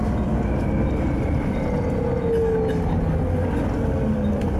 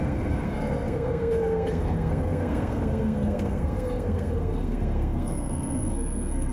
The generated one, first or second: second